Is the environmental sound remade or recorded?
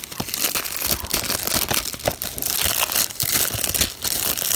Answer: recorded